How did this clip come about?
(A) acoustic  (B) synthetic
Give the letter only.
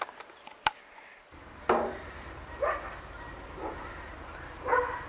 A